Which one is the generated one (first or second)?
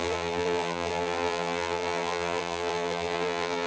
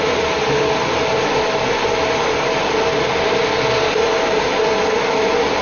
first